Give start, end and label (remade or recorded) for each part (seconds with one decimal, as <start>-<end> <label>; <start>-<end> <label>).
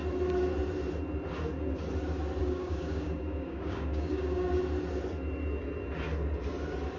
0.0-2.4 recorded; 2.4-4.5 remade; 4.5-7.0 recorded